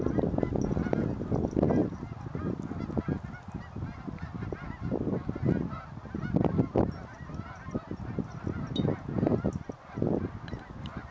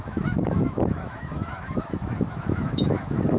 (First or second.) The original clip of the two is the first